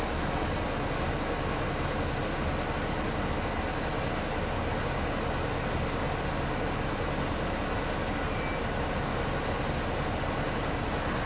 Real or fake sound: real